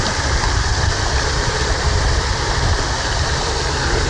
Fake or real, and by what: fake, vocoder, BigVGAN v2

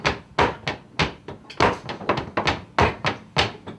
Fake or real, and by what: real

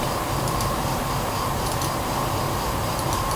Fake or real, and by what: fake, vocoder, BigVGAN v2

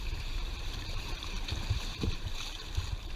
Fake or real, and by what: fake, vocoder, BigVGAN v2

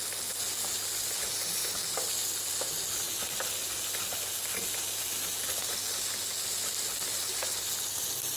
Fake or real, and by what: real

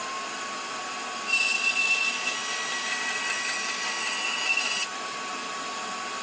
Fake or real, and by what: real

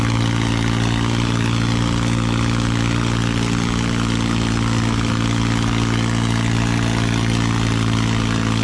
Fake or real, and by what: real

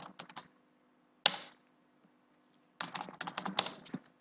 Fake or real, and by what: real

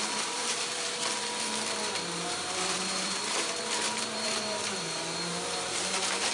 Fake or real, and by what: fake, vocoder, BigVGAN v2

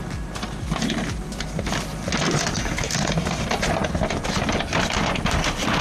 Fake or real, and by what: real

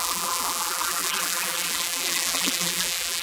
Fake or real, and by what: fake, vocoder, BigVGAN v2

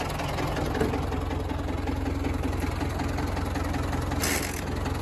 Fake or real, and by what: real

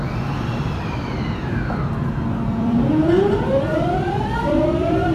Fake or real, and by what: fake, vocoder, BigVGAN v2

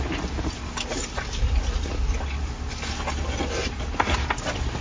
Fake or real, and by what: real